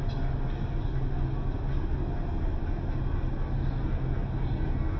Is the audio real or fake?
real